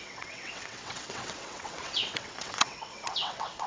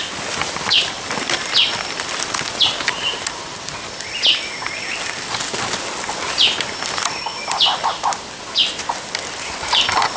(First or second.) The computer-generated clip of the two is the first